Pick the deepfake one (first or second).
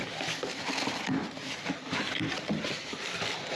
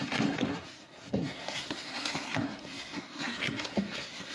second